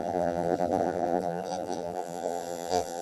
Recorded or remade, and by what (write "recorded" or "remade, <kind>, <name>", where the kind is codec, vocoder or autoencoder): remade, vocoder, BigVGAN v2